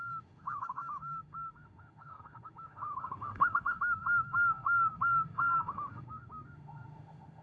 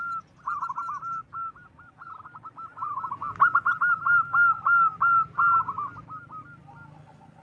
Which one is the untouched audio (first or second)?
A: second